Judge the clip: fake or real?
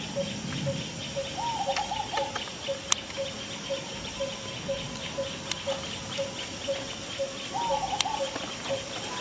real